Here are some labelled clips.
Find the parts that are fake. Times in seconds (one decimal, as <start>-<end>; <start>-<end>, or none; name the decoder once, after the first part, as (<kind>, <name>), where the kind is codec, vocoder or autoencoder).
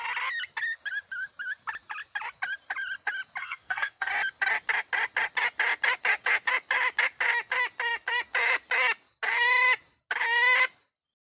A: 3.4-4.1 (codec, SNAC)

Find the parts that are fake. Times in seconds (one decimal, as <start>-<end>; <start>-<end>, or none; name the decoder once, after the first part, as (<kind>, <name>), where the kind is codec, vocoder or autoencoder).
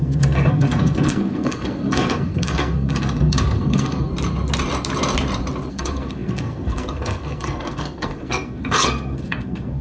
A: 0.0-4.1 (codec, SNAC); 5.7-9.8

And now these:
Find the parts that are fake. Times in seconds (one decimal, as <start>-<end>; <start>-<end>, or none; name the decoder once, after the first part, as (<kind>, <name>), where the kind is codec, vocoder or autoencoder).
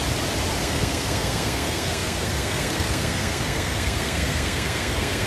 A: 0.6-5.3 (codec, SNAC)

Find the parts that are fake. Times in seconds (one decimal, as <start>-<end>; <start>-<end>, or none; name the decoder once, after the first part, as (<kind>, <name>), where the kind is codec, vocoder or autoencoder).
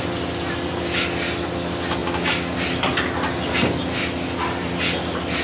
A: none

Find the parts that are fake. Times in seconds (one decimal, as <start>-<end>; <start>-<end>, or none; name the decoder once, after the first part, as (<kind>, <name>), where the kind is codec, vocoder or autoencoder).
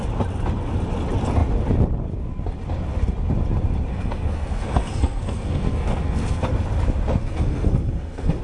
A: 3.9-6.4 (codec, SNAC); 7.2-8.4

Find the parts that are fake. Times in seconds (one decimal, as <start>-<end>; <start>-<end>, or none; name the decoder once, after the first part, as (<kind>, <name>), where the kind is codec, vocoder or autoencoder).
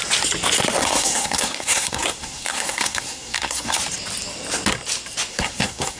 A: 0.8-3.8 (codec, SNAC); 5.3-6.0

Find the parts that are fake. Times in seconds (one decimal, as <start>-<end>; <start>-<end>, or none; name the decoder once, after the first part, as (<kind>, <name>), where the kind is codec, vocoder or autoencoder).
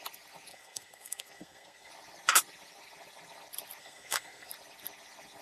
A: 0.5-1.9 (codec, SNAC); 3.8-4.5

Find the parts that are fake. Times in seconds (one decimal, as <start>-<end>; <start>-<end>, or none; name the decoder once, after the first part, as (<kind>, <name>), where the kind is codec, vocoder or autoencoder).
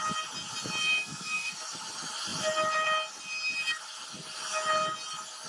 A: 0.8-1.5 (codec, SNAC)